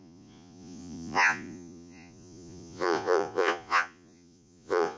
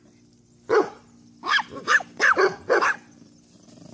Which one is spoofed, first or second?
first